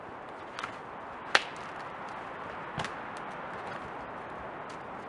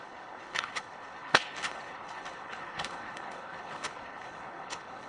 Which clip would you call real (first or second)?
first